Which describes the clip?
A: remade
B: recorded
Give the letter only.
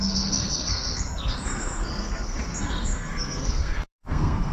A